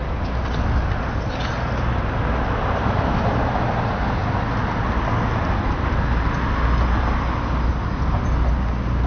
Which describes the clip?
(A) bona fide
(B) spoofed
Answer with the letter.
A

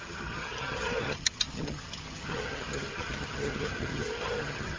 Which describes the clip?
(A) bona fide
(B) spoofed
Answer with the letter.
B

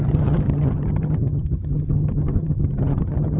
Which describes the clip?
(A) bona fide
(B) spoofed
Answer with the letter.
B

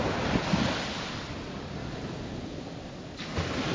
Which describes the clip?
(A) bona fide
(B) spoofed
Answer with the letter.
A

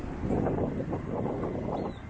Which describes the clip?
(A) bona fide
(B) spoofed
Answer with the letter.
A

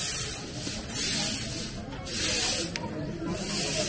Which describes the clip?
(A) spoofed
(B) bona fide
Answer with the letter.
B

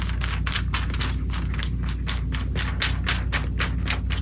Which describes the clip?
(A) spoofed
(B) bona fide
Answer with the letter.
B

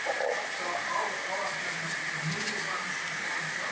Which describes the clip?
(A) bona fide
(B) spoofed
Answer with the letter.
A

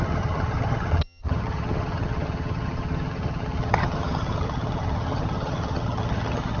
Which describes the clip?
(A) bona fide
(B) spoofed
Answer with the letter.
B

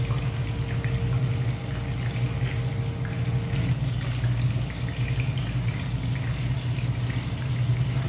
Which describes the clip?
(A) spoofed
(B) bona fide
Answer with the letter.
B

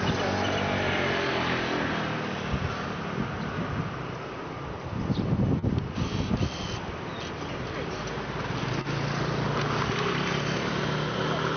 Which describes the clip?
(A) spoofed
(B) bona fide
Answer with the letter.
B